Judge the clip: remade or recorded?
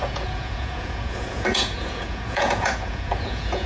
remade